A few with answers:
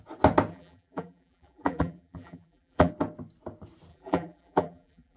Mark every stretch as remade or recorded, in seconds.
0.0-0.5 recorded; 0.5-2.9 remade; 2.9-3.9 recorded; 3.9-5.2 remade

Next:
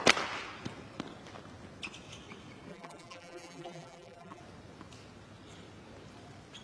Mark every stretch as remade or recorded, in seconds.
0.0-2.7 recorded; 2.7-4.4 remade; 4.4-6.6 recorded

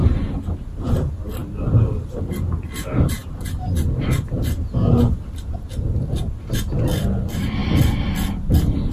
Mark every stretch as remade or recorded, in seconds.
0.0-1.4 recorded; 1.4-2.3 remade; 2.3-8.9 recorded